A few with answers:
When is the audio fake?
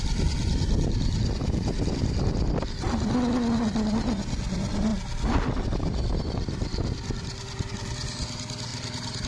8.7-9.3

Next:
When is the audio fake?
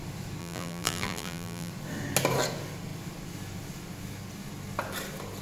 0.4-1.7